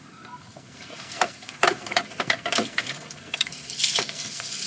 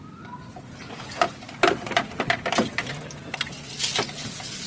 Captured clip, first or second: second